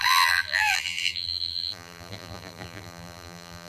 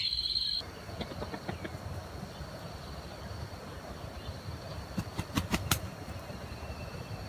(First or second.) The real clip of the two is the second